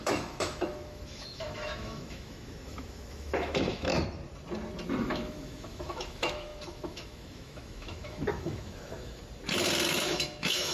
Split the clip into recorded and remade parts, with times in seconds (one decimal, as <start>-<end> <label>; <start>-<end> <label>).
0.0-3.9 remade; 3.9-5.0 recorded; 5.0-9.2 remade; 9.2-9.9 recorded; 9.9-10.7 remade